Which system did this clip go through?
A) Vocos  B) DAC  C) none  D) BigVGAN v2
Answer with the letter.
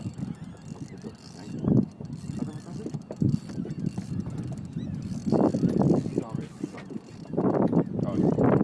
D